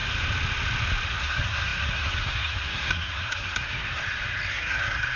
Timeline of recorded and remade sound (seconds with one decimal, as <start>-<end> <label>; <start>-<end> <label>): 0.0-1.1 recorded; 1.1-4.0 remade; 4.0-4.5 recorded; 4.5-5.2 remade